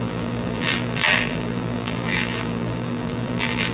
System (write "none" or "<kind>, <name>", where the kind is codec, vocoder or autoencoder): vocoder, BigVGAN v2